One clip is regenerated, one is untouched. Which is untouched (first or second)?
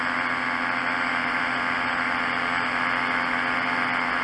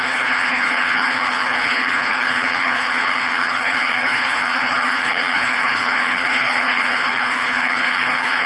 first